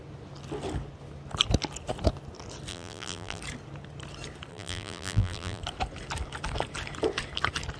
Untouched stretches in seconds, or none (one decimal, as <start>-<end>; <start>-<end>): 0.0-2.7; 3.4-4.5; 5.6-7.8

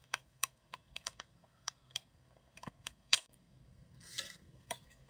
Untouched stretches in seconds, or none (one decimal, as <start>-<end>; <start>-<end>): none

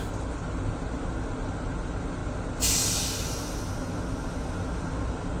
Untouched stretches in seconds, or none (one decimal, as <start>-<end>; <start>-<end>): 0.0-5.4